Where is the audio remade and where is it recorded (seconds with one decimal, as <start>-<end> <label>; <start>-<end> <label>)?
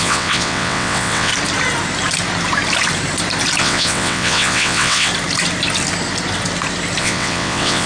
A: 0.0-1.3 remade; 1.3-3.6 recorded; 3.6-5.1 remade; 5.1-7.0 recorded; 7.0-7.9 remade